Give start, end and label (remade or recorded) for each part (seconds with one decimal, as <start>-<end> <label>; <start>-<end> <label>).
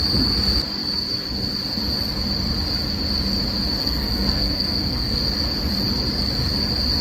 0.0-3.8 recorded; 3.8-5.2 remade; 5.2-7.0 recorded